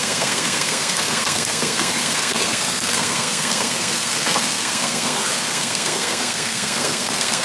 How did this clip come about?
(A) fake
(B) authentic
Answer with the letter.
A